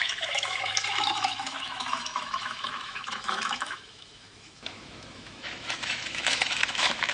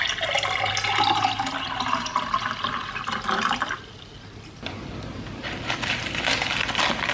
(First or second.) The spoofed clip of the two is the first